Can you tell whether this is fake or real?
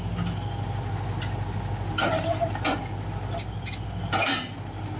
real